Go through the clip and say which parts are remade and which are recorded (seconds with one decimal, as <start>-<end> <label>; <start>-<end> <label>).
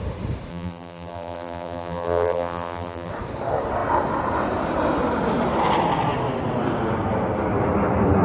0.0-0.5 recorded; 0.5-3.1 remade; 3.1-8.2 recorded